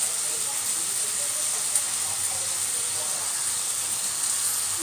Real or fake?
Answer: real